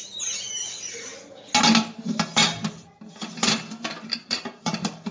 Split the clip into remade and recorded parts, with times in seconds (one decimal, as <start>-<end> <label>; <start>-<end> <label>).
0.0-1.1 remade; 1.1-4.2 recorded; 4.2-5.1 remade